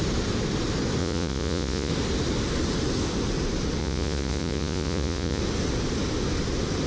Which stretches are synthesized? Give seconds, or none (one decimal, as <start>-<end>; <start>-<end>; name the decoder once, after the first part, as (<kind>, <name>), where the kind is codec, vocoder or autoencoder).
1.0-1.9 (vocoder, Vocos); 3.8-5.4